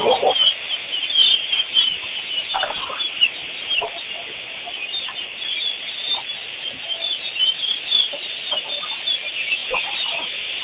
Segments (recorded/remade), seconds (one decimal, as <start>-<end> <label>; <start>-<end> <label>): 0.0-1.2 recorded; 1.2-5.4 remade; 5.4-7.4 recorded; 7.4-8.4 remade; 8.4-9.6 recorded; 9.6-10.6 remade